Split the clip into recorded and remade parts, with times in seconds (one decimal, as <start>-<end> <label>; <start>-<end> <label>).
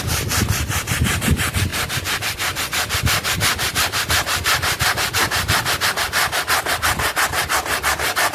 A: 0.0-8.3 remade